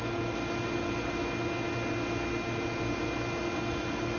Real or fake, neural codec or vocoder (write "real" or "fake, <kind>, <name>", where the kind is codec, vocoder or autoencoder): real